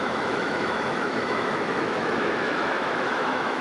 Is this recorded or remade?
remade